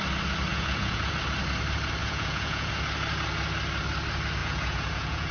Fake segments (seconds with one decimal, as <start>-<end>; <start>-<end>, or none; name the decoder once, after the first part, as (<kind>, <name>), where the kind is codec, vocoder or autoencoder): 0.5-1.1 (vocoder, Vocos); 2.0-2.7; 4.4-5.3

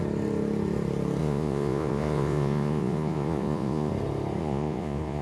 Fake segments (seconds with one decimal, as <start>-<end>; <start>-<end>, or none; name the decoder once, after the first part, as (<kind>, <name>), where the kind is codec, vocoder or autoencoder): 1.2-3.9 (vocoder, Vocos); 4.4-5.2